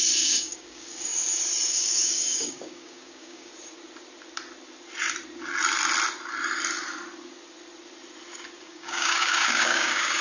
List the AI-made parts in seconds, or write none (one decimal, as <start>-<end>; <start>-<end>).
0.0-1.1; 1.7-3.5; 8.6-10.2

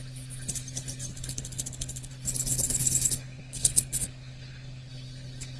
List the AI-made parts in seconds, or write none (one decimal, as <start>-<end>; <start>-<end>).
1.1-2.1; 2.5-4.9

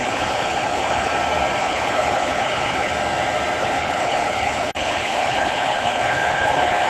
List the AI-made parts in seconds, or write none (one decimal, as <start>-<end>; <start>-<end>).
0.0-1.1; 1.6-2.9; 3.6-6.9

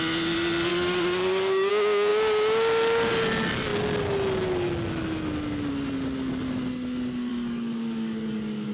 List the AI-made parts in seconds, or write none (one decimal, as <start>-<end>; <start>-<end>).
0.7-1.7; 7.3-8.7